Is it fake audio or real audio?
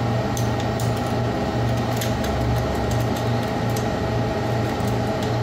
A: real